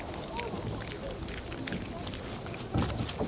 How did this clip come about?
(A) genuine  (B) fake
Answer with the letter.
A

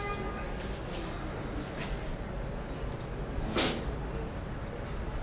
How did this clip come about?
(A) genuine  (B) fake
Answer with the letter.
A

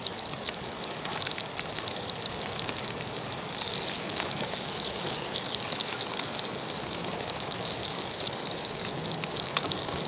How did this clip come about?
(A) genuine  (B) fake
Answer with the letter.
B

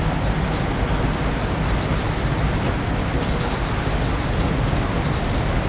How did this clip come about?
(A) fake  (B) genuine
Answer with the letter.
B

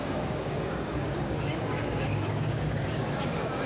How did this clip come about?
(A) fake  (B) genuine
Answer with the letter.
A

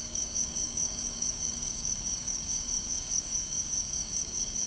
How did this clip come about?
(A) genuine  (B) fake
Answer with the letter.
B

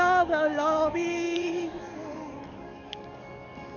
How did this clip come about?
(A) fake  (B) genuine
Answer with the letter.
A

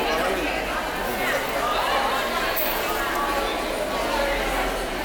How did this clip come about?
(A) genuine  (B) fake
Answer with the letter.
A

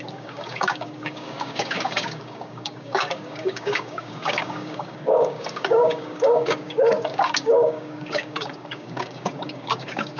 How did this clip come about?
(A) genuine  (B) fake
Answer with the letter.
B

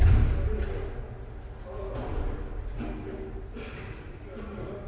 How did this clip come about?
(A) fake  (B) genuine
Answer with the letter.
B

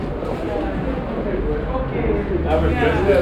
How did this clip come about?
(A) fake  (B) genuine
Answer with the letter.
B